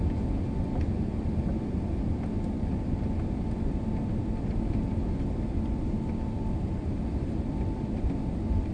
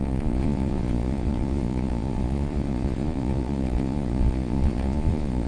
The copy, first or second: second